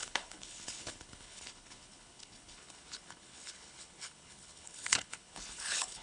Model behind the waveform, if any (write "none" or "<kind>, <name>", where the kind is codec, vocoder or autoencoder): codec, HILCodec